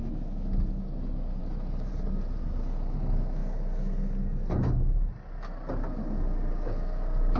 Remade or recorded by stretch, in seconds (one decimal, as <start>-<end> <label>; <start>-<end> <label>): 0.0-7.4 recorded